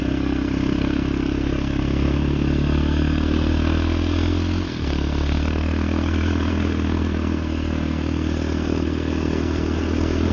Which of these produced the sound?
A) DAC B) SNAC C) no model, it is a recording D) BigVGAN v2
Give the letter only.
B